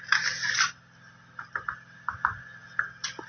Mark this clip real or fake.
real